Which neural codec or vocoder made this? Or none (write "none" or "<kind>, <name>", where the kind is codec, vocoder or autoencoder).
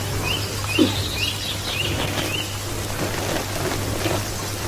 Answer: none